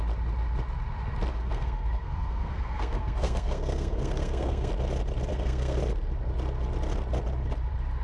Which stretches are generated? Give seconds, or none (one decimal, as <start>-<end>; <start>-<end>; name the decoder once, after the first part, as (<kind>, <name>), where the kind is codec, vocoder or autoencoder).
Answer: 1.3-4.7 (codec, SNAC); 5.3-5.8